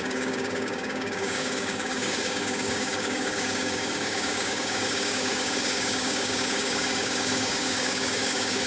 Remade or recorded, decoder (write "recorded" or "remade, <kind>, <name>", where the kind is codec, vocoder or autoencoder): remade, codec, DAC